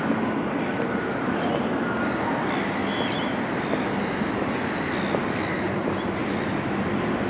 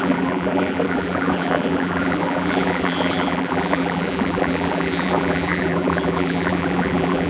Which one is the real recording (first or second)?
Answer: first